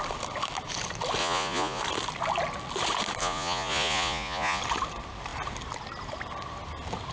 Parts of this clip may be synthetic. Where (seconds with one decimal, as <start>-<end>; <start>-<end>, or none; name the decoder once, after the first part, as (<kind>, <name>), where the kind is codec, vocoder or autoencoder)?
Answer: 1.2-1.8 (vocoder, Vocos); 3.2-4.6